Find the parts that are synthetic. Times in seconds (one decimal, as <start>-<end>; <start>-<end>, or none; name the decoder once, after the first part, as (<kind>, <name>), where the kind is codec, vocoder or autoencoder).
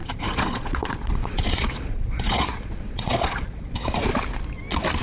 0.0-4.1 (vocoder, Vocos)